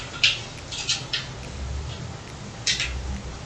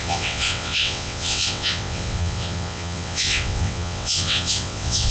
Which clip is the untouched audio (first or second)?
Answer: first